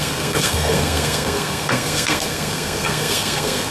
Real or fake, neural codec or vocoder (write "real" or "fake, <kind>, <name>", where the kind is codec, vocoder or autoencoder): fake, codec, SNAC